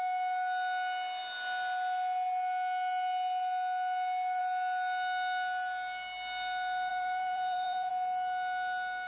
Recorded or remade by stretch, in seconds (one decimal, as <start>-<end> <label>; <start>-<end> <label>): 0.0-6.9 recorded; 6.9-7.9 remade; 7.9-9.1 recorded